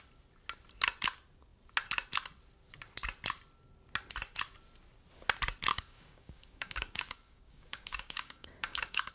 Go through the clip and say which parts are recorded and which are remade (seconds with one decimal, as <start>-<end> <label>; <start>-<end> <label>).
0.0-5.7 recorded; 5.7-9.1 remade